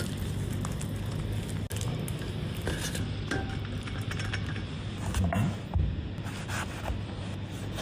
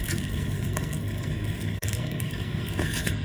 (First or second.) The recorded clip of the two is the first